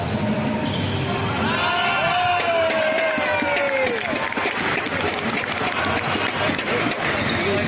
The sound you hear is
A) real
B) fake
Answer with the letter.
A